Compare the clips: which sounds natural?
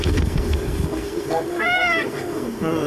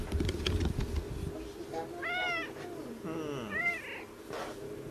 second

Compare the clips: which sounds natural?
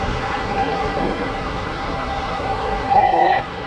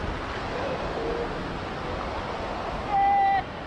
second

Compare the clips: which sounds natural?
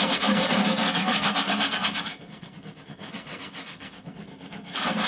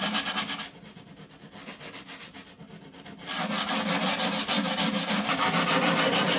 second